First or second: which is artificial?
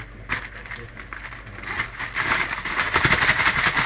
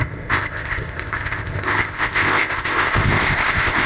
second